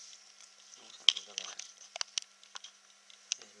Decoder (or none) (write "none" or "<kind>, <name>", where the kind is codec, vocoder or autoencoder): none